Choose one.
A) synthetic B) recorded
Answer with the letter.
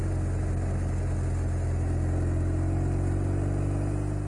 B